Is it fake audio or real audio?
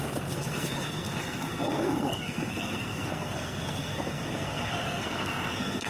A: fake